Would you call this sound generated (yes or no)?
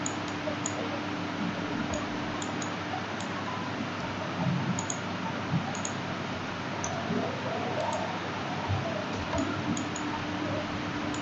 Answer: no